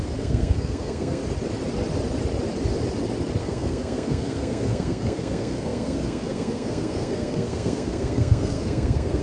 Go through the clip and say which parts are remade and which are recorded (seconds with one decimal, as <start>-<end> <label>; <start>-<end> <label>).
0.0-1.2 remade; 1.2-3.4 recorded; 3.4-9.2 remade

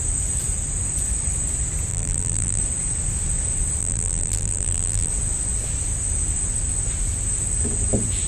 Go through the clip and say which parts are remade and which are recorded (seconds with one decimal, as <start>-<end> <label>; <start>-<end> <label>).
0.0-1.9 recorded; 1.9-2.6 remade; 2.6-3.8 recorded; 3.8-5.1 remade; 5.1-8.3 recorded